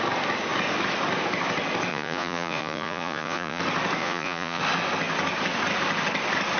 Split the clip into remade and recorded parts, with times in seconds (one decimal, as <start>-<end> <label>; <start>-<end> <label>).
0.0-1.9 recorded; 1.9-3.6 remade; 3.6-4.0 recorded; 4.0-4.6 remade; 4.6-6.6 recorded